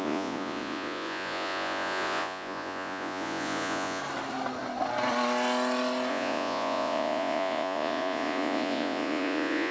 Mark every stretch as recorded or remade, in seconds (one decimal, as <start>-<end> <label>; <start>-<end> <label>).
0.0-4.0 remade; 4.0-6.1 recorded; 6.1-9.7 remade